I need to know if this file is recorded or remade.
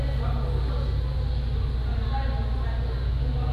recorded